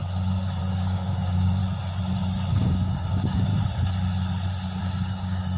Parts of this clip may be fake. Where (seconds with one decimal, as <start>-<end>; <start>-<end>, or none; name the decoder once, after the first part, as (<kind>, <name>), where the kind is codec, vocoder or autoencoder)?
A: 0.6-1.6 (codec, DAC); 2.5-3.5; 4.8-5.6